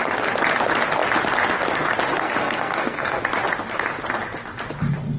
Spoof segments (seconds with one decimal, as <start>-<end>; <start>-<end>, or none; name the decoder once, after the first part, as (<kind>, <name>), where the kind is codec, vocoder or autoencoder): 2.1-3.2 (codec, SNAC)